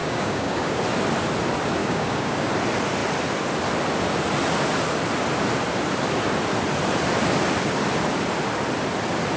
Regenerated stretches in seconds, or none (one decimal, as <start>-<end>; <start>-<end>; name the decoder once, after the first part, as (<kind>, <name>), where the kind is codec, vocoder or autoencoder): 0.0-0.8 (codec, DAC); 1.8-2.5